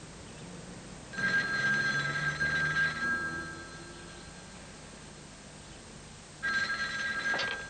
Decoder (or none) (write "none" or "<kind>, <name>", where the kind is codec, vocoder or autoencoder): none